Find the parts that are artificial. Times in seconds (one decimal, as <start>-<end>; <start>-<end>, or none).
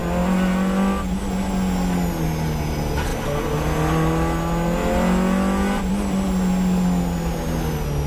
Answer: none